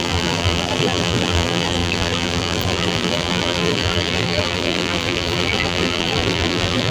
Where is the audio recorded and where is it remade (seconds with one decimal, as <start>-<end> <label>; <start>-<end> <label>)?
0.0-6.9 remade

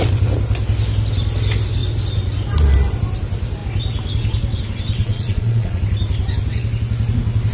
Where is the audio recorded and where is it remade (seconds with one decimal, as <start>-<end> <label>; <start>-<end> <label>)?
0.0-5.0 recorded; 5.0-5.8 remade; 5.8-7.5 recorded

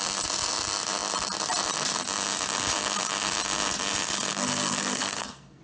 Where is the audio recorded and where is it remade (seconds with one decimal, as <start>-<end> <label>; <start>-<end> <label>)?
0.0-4.3 recorded; 4.3-5.6 remade

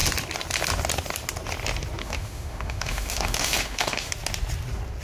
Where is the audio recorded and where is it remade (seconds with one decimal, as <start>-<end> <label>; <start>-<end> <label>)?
0.0-2.0 recorded; 2.0-4.1 remade; 4.1-5.0 recorded

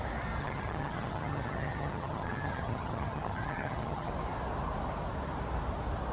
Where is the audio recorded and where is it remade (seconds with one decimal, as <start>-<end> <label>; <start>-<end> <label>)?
0.0-0.4 recorded; 0.4-4.1 remade; 4.1-6.1 recorded